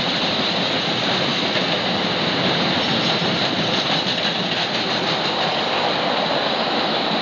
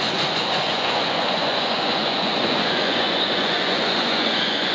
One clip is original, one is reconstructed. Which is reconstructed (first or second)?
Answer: second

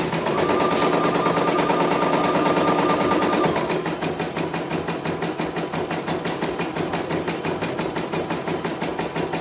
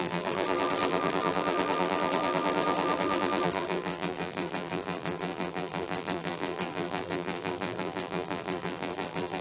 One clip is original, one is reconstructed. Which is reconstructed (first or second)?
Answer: second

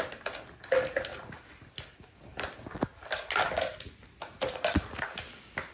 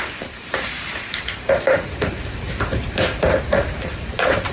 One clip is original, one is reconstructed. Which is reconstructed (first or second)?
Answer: second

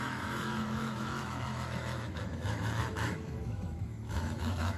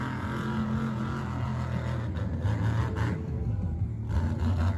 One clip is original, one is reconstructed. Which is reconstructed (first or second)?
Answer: first